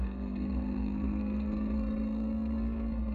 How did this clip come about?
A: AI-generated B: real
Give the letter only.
A